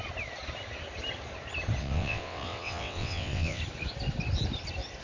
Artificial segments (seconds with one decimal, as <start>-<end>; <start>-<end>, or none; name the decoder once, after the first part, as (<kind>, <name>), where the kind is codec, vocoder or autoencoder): 1.8-3.6 (vocoder, WaveNeXt)